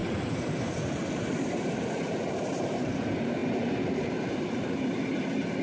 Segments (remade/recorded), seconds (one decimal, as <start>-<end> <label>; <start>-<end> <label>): 0.0-1.1 recorded; 1.1-5.6 remade